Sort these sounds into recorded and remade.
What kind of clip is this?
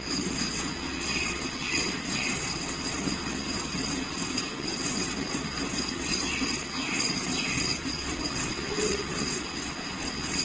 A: remade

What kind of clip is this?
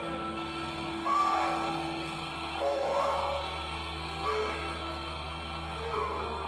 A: remade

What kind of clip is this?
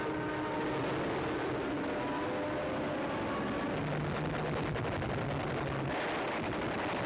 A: recorded